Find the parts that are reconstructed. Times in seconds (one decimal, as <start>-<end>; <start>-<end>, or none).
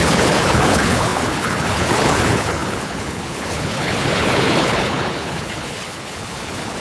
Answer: 0.0-6.8